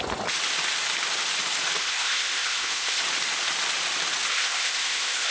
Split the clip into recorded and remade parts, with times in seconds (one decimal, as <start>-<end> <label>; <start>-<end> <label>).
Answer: 0.0-1.8 recorded; 1.8-3.0 remade; 3.0-4.3 recorded; 4.3-5.3 remade